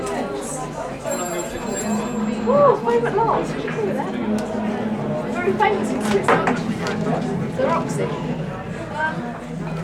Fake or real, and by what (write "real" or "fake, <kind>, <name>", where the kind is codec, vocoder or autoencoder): real